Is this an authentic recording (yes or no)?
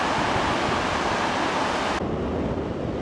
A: yes